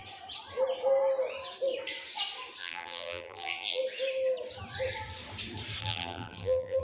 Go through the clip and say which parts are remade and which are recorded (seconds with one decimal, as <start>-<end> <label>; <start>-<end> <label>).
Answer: 0.0-2.6 recorded; 2.6-3.8 remade; 3.8-5.8 recorded; 5.8-6.8 remade